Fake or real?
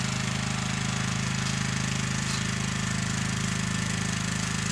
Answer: real